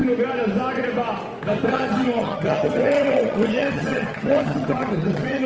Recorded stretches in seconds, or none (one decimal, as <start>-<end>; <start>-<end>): 0.0-1.7